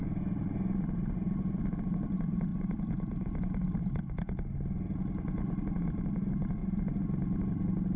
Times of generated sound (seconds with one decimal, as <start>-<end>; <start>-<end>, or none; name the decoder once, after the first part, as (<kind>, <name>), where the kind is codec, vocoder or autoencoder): none